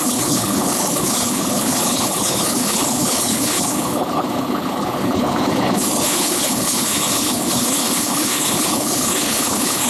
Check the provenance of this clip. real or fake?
fake